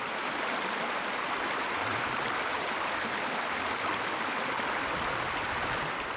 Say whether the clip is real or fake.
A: real